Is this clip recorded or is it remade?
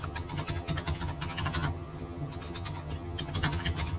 remade